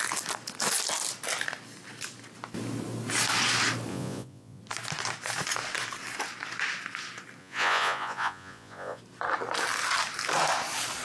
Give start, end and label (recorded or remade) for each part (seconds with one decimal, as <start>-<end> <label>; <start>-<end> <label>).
0.0-3.9 recorded; 3.9-4.6 remade; 4.6-7.4 recorded; 7.4-9.0 remade; 9.0-11.0 recorded